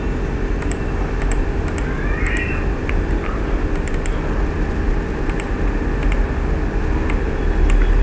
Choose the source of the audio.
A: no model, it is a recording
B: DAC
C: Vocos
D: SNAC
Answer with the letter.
A